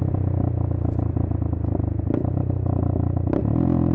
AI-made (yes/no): no